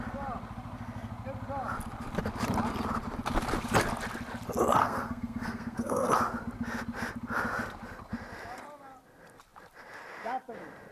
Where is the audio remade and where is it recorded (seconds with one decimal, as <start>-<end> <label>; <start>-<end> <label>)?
0.0-4.8 recorded; 4.8-6.1 remade; 6.1-10.9 recorded

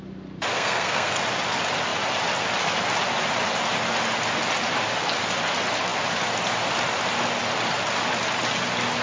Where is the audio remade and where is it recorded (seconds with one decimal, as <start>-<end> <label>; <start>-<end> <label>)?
0.0-0.5 recorded; 0.5-1.2 remade; 1.2-9.0 recorded

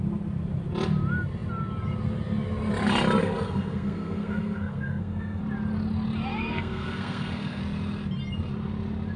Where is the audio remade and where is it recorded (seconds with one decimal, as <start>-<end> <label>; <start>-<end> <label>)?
0.0-3.2 recorded; 3.2-5.4 remade; 5.4-6.3 recorded; 6.3-7.6 remade; 7.6-9.2 recorded

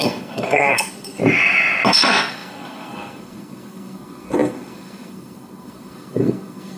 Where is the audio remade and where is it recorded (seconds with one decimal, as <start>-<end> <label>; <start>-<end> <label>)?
0.0-1.2 remade; 1.2-1.9 recorded; 1.9-6.8 remade

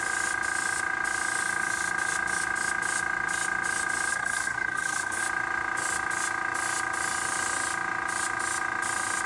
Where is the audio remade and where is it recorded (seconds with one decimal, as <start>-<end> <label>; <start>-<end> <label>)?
0.0-4.1 recorded; 4.1-5.2 remade; 5.2-9.3 recorded

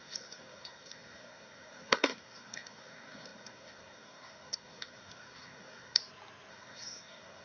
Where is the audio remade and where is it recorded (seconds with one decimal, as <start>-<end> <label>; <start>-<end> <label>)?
0.0-6.0 remade; 6.0-6.5 recorded; 6.5-7.4 remade

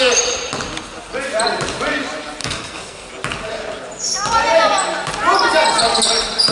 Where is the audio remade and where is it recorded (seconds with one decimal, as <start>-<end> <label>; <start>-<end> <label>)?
0.0-2.4 recorded; 2.4-3.1 remade; 3.1-6.5 recorded